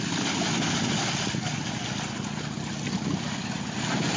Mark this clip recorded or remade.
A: recorded